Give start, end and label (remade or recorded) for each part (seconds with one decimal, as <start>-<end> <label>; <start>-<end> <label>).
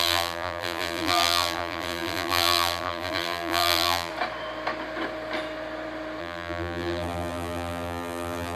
0.0-4.1 remade; 4.1-6.2 recorded; 6.2-8.6 remade